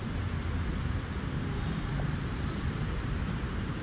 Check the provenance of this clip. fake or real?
fake